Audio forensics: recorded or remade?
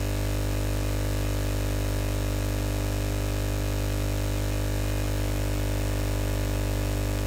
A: recorded